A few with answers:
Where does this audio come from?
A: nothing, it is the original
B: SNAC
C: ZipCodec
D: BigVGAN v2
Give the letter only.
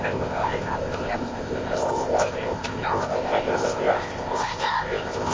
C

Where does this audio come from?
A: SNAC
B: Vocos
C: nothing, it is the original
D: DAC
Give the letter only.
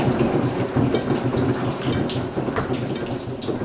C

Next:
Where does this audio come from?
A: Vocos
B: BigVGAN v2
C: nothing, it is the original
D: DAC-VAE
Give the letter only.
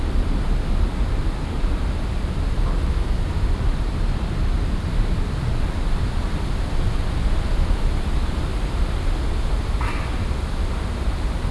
C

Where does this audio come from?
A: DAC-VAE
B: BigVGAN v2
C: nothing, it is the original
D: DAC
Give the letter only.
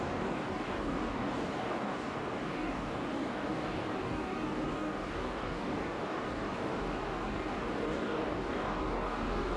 D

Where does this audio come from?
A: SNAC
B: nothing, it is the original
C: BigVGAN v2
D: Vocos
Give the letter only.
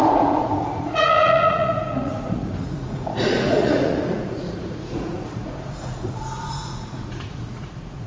D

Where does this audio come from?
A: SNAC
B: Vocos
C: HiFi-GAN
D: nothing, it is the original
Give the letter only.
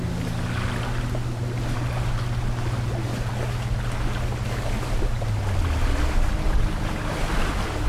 D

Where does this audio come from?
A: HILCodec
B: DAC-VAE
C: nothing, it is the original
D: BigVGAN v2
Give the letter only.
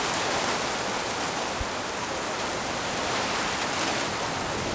C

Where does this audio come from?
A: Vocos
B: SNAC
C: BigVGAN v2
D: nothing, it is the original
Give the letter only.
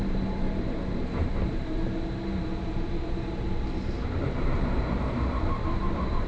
C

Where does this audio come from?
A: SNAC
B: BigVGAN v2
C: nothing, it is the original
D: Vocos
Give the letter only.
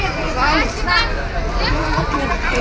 C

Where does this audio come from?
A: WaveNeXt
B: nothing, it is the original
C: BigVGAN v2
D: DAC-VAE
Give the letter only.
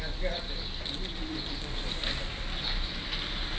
B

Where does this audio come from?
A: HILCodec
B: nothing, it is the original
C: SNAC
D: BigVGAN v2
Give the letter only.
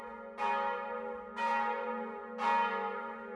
B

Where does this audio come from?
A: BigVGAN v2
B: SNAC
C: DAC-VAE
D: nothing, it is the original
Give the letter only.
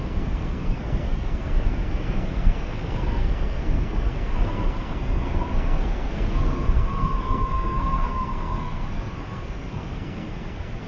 B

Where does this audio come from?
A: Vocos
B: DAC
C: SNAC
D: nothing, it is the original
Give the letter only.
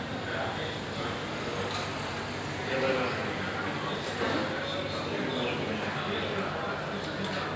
D